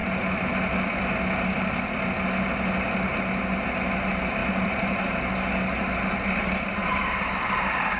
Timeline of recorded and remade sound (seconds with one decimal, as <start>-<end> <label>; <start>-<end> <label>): 0.0-4.4 recorded; 4.4-5.3 remade; 5.3-6.8 recorded; 6.8-7.3 remade; 7.3-8.0 recorded